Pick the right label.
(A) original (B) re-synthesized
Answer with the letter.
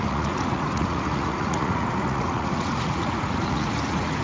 B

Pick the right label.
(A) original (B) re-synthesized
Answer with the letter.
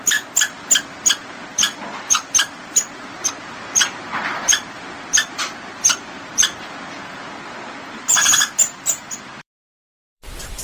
B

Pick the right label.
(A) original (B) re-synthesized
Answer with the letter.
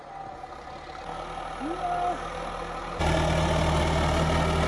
A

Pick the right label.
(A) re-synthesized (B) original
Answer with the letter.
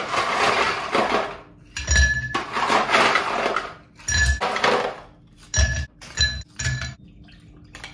B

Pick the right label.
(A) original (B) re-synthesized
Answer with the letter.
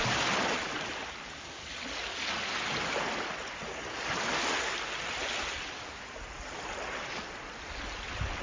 A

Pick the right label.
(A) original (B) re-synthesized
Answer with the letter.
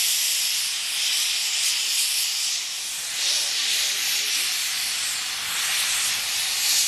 A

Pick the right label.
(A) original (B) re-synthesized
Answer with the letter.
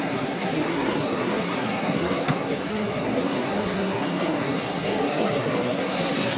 B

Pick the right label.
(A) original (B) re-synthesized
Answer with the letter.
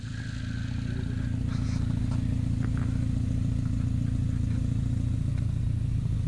A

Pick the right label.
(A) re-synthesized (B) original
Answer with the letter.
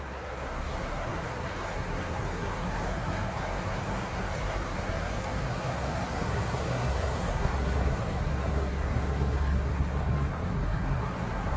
A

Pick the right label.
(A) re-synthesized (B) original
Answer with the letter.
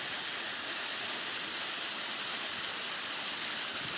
B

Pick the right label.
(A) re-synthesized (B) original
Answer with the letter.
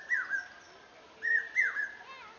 B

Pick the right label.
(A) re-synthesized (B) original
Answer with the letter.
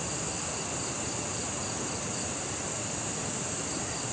B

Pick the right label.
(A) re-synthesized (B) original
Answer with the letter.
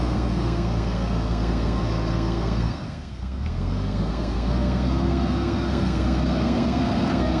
A